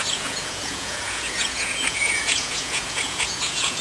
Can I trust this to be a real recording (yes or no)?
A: no